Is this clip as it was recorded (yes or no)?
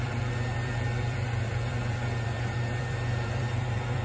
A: no